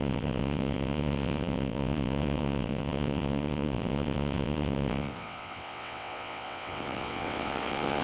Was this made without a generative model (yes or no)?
no